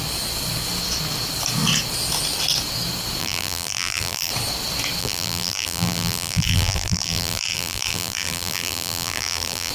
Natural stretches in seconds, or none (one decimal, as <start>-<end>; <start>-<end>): 0.0-3.2; 4.3-5.0